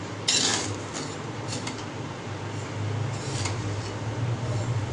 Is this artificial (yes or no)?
no